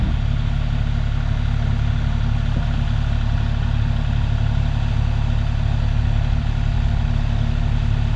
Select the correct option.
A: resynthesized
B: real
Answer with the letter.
B